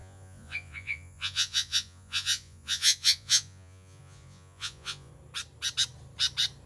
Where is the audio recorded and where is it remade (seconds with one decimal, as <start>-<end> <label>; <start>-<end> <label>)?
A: 0.0-5.1 remade; 5.1-6.7 recorded